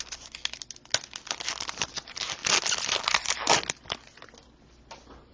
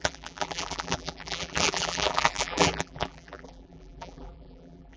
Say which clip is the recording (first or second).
first